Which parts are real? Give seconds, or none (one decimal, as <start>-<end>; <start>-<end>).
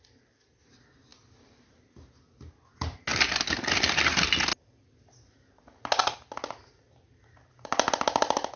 0.0-8.6